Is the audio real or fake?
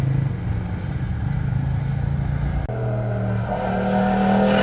real